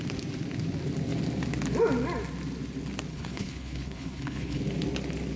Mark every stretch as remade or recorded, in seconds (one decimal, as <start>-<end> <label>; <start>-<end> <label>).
0.0-3.1 recorded; 3.1-4.6 remade; 4.6-5.4 recorded

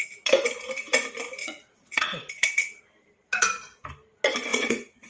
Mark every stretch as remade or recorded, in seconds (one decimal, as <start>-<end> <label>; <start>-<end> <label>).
0.0-1.4 recorded; 1.4-2.8 remade; 2.8-4.5 recorded; 4.5-5.1 remade

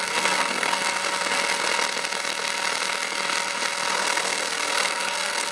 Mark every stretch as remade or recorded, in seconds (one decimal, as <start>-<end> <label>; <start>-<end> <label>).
0.0-0.8 remade; 0.8-3.9 recorded; 3.9-5.5 remade

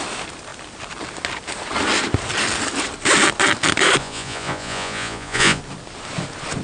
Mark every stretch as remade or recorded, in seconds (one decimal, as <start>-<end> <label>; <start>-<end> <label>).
0.0-4.0 recorded; 4.0-5.6 remade; 5.6-6.6 recorded

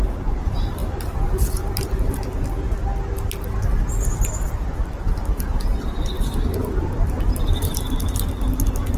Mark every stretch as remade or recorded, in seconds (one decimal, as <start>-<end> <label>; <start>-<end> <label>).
0.0-2.2 remade; 2.2-4.8 recorded; 4.8-9.0 remade

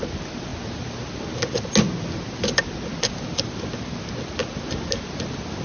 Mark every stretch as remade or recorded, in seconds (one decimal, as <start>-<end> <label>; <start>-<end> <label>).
0.0-5.6 recorded